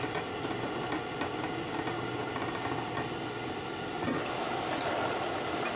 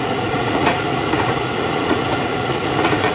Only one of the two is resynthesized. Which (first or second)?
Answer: second